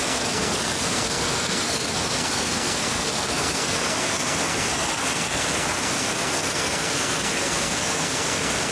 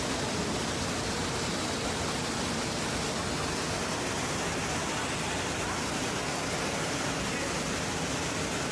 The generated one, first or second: first